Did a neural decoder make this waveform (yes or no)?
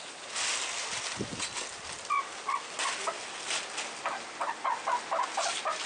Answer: no